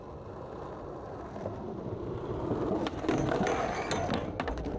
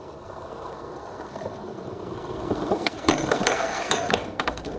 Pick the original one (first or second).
first